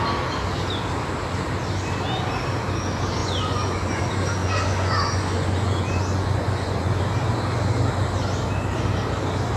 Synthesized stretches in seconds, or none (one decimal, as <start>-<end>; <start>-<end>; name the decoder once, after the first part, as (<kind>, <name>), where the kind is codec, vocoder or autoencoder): 3.2-4.0 (vocoder, Vocos); 4.4-7.0